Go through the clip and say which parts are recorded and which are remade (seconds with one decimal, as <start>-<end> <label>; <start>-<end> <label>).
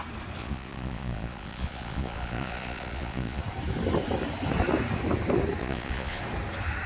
0.0-0.4 recorded; 0.4-3.4 remade; 3.4-5.6 recorded; 5.6-6.2 remade; 6.2-6.9 recorded